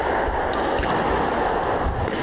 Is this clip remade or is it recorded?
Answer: recorded